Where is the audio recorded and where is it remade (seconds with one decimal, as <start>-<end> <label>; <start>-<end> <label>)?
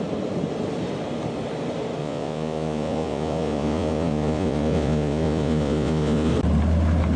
0.0-2.0 recorded; 2.0-6.3 remade; 6.3-7.2 recorded